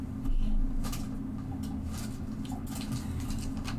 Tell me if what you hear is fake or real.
real